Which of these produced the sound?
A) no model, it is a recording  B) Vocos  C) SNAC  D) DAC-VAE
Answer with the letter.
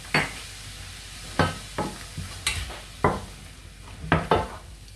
A